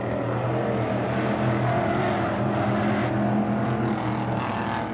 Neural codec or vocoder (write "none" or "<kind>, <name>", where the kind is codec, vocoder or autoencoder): none